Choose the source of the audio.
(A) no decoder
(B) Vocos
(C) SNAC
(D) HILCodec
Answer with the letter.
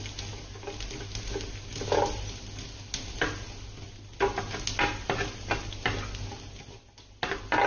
A